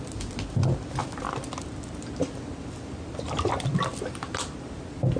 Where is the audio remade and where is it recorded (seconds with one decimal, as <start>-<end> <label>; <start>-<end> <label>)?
0.0-5.2 recorded